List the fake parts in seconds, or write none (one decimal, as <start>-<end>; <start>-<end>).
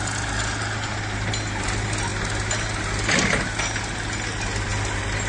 none